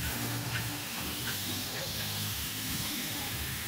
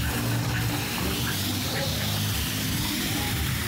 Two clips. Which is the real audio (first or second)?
second